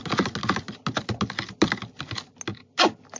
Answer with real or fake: real